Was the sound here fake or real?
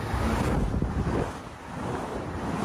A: real